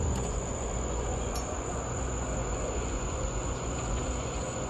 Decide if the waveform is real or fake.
fake